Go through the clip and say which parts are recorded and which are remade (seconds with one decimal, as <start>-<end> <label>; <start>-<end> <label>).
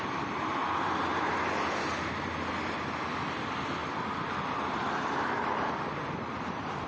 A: 0.0-3.8 recorded; 3.8-6.9 remade